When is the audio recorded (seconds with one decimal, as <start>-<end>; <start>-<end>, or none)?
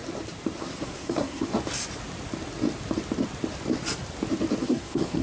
0.0-0.6; 1.5-4.6